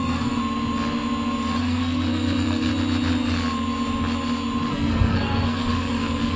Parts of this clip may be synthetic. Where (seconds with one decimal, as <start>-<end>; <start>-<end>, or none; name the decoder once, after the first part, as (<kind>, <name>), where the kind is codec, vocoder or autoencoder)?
0.0-0.4 (codec, SNAC); 1.6-2.7; 4.7-6.4